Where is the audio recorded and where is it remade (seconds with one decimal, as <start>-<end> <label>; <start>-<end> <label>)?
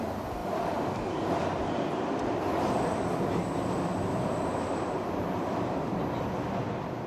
0.0-7.1 recorded